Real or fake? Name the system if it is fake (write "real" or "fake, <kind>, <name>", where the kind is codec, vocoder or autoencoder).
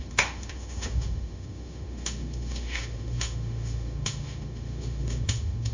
fake, autoencoder, DAC-VAE